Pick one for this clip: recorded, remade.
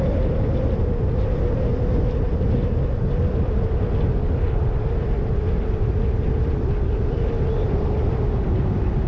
recorded